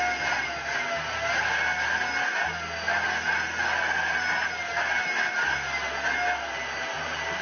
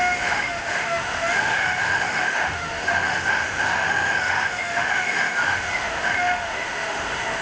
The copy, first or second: second